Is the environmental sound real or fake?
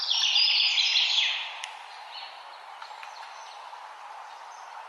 real